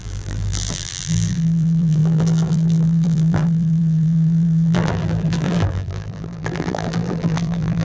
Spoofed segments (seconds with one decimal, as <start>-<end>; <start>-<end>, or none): 0.0-7.8